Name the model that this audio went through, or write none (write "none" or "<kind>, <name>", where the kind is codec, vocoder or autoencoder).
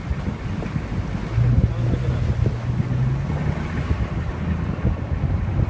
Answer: none